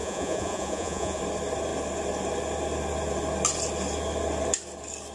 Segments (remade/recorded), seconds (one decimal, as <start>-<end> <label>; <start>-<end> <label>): 0.0-1.2 remade; 1.2-5.1 recorded